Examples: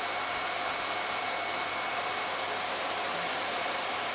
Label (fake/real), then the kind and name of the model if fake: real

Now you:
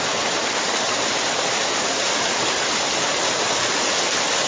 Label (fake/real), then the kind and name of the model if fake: fake, vocoder, BigVGAN v2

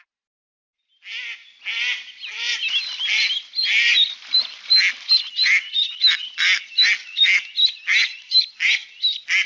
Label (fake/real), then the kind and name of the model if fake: real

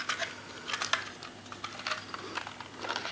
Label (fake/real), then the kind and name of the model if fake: real